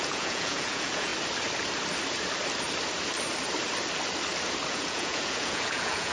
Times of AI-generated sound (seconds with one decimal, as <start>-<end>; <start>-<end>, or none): 0.0-1.1; 4.7-6.1